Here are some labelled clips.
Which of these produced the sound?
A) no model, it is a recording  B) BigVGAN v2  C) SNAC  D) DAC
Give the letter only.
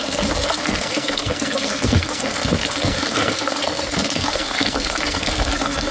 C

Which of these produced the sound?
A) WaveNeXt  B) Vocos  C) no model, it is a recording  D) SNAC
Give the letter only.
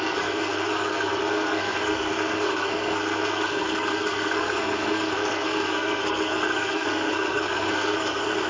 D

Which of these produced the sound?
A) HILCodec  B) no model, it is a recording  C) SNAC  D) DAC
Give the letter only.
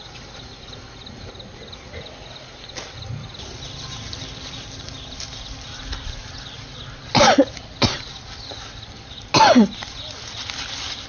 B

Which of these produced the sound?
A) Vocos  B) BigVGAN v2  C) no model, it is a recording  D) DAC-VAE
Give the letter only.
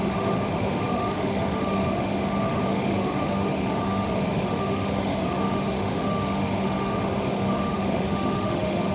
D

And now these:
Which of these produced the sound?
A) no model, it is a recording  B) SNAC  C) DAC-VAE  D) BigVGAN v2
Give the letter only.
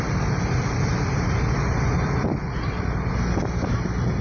A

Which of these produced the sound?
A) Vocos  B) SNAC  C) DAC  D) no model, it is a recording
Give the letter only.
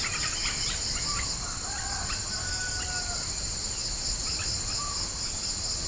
D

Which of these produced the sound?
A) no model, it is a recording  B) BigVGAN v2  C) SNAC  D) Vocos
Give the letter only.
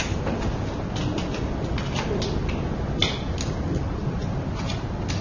A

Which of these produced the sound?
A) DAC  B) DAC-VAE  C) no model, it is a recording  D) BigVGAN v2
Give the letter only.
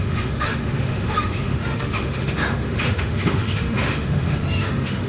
B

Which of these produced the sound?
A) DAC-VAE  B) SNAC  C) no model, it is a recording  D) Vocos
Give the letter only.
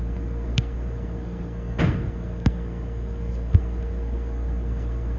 B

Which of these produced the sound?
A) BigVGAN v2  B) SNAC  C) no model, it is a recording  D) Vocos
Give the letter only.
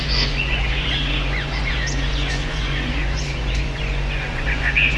D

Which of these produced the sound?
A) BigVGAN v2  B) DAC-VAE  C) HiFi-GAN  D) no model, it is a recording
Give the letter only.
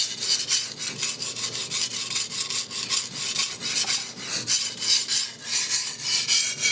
D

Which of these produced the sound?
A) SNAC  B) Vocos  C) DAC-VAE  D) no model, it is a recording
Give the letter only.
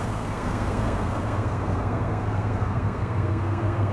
A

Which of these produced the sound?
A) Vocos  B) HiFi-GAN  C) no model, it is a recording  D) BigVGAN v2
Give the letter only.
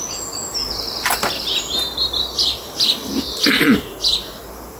C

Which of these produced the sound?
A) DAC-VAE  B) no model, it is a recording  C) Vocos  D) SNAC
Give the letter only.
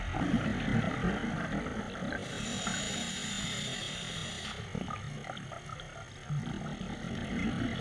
B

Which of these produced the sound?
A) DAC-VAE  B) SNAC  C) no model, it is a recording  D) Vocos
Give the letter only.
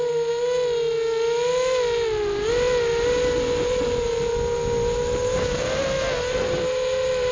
C